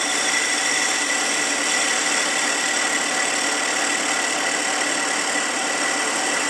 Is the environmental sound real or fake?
real